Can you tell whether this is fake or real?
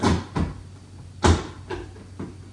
real